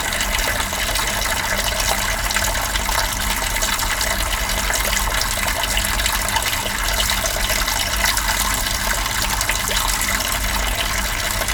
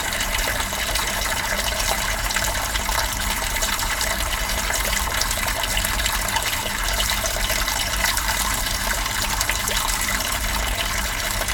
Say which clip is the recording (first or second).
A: first